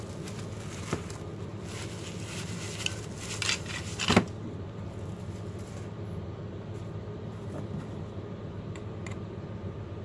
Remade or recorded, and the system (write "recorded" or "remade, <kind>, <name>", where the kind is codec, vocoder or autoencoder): recorded